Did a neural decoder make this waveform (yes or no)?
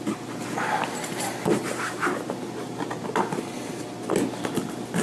no